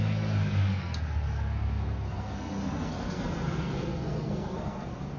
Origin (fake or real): fake